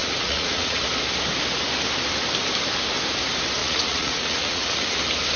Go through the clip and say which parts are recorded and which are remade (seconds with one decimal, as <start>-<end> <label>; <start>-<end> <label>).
0.0-0.8 remade; 0.8-3.6 recorded; 3.6-5.0 remade; 5.0-5.4 recorded